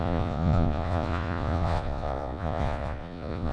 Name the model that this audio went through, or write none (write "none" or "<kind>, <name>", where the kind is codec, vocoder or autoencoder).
vocoder, Vocos